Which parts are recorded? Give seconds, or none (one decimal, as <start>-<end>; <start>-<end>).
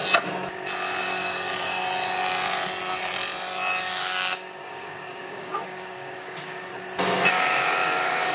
0.0-1.0; 1.8-3.8; 6.7-7.3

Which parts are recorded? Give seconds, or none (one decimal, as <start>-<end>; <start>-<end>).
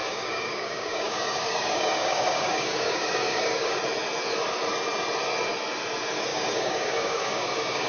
3.8-6.3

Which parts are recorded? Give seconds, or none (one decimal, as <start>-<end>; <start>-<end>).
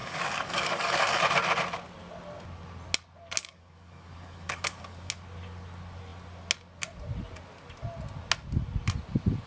1.2-3.4; 5.1-9.5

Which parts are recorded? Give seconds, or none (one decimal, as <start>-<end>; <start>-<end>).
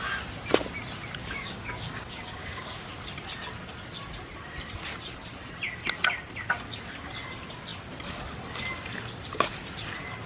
0.0-1.2; 2.9-10.3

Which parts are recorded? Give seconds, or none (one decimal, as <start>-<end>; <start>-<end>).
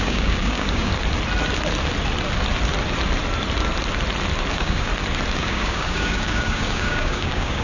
0.9-4.5; 4.9-5.4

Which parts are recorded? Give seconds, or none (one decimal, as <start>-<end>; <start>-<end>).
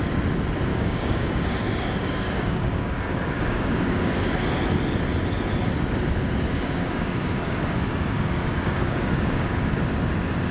0.0-0.7; 4.3-6.5; 9.7-10.5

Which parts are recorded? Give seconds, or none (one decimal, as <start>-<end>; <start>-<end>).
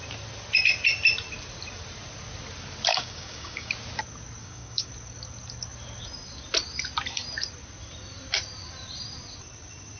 0.0-2.9; 3.7-4.4; 4.9-10.0